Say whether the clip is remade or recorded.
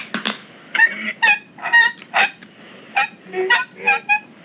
recorded